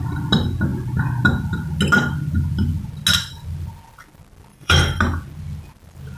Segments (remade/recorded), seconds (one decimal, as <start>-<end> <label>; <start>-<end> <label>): 0.0-4.5 recorded; 4.5-5.0 remade; 5.0-6.2 recorded